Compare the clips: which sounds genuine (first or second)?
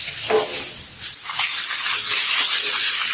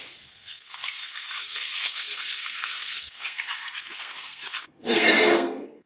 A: first